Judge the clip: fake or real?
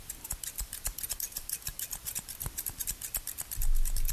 real